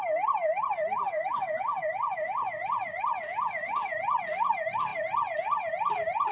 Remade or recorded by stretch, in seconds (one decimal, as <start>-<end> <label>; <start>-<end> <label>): 0.0-6.3 recorded